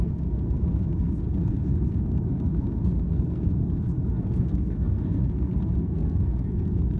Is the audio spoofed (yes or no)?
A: yes